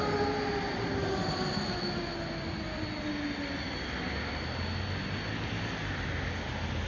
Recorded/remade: recorded